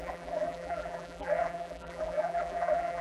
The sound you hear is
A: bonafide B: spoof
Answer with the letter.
B